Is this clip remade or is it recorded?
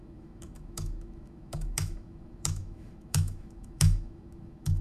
remade